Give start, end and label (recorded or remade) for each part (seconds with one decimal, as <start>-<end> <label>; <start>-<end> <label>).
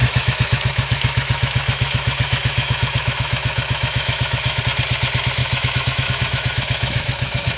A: 0.0-4.6 remade; 4.6-5.4 recorded; 5.4-7.6 remade